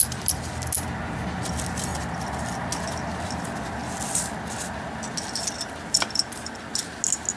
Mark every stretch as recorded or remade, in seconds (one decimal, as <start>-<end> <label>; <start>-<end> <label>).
0.0-7.4 recorded

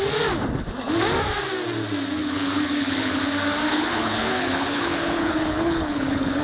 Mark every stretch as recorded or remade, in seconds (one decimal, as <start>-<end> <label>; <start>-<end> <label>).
0.0-2.2 recorded; 2.2-3.2 remade; 3.2-3.7 recorded; 3.7-6.4 remade

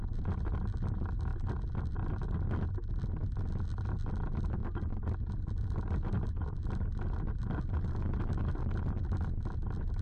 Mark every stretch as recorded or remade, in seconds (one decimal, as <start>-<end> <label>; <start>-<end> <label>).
0.0-10.0 recorded

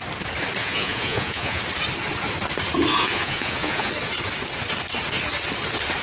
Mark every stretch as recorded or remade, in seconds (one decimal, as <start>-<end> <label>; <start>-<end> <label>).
0.0-0.6 recorded; 0.6-1.6 remade; 1.6-2.9 recorded; 2.9-3.9 remade; 3.9-6.0 recorded

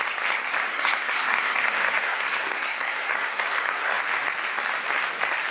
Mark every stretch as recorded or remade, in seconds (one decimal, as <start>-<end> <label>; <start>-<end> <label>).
0.0-0.7 recorded; 0.7-4.0 remade; 4.0-5.5 recorded

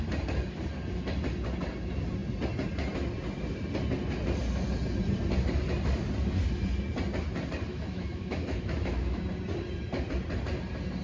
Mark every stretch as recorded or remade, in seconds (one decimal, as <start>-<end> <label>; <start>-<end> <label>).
0.0-7.7 recorded; 7.7-9.2 remade; 9.2-11.0 recorded